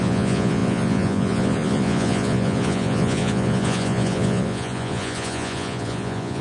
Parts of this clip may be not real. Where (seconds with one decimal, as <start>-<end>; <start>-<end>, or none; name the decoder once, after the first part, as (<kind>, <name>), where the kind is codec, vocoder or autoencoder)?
0.0-6.4 (vocoder, Vocos)